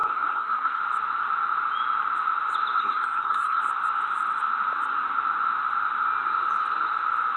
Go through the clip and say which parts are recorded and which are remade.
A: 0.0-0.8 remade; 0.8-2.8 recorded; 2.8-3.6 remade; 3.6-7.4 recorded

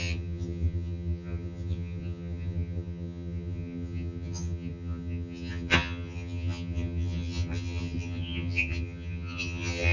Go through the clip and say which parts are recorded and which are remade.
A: 0.0-9.9 remade

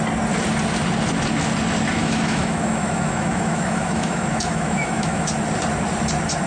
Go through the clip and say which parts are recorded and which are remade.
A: 0.0-2.0 recorded; 2.0-5.3 remade; 5.3-6.5 recorded

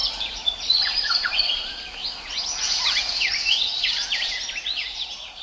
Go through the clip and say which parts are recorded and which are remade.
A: 0.0-4.0 remade; 4.0-4.6 recorded; 4.6-5.4 remade

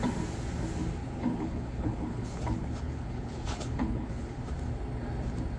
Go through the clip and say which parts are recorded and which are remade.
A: 0.0-1.0 recorded; 1.0-4.4 remade; 4.4-5.6 recorded